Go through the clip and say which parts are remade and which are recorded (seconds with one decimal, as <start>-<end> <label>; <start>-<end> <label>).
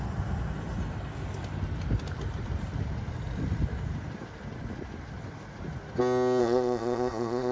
0.0-6.4 recorded; 6.4-7.5 remade